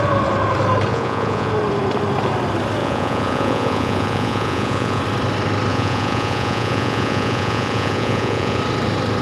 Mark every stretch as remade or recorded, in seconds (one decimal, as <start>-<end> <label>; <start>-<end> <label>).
0.0-0.9 recorded; 0.9-1.5 remade; 1.5-2.8 recorded; 2.8-5.0 remade; 5.0-5.7 recorded; 5.7-8.6 remade; 8.6-9.2 recorded